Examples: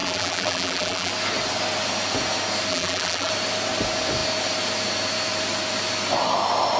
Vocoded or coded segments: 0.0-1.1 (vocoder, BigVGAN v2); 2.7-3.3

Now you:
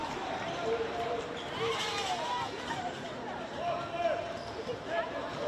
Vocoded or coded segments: none